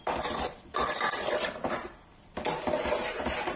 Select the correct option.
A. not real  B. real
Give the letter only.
B